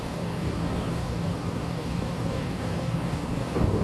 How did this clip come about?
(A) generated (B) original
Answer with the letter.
A